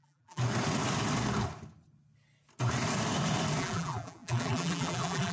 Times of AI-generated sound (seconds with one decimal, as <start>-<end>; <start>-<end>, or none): 0.0-0.4; 3.6-5.3